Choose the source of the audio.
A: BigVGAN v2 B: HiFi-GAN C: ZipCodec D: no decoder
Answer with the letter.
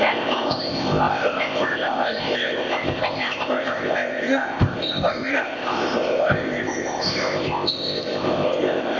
C